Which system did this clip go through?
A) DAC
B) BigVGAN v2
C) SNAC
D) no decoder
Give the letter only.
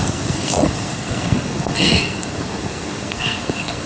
C